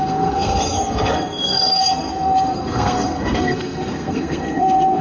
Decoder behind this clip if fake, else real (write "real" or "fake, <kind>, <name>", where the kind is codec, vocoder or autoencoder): fake, codec, SNAC